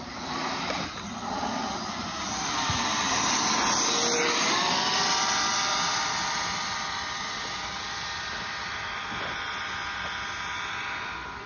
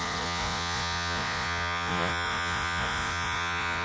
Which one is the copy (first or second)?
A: second